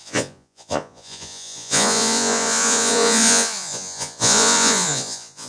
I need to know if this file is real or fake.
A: fake